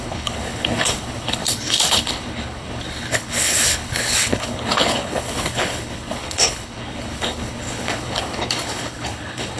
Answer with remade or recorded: remade